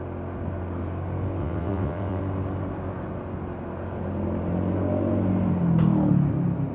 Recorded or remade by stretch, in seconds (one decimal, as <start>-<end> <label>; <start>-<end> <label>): 0.0-1.4 recorded; 1.4-2.2 remade; 2.2-6.7 recorded